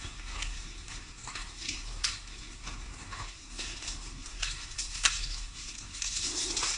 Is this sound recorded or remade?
remade